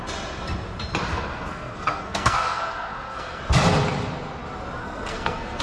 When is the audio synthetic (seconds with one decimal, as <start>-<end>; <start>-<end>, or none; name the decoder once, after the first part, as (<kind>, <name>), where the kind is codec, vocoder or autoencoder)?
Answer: 1.1-3.4 (codec, SNAC); 4.8-5.6